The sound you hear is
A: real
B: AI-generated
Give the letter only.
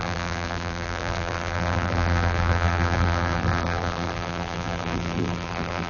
B